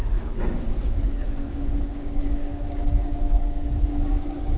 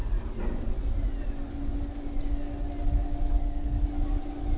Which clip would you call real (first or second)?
second